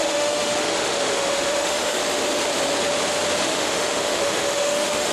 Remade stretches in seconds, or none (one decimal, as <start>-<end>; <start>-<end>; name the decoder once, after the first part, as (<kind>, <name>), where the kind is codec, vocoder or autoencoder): 0.0-2.0 (autoencoder, DAC-VAE); 3.4-5.1